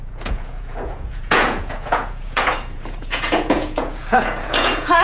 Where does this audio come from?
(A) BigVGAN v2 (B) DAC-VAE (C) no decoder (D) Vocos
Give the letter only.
D